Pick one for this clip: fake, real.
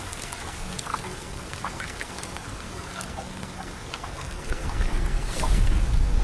fake